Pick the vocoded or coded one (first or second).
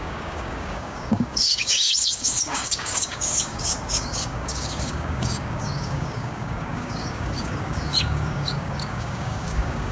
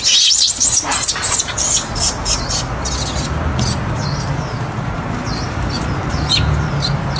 first